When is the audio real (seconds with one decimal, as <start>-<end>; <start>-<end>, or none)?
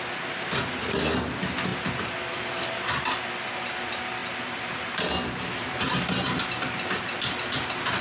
0.0-8.0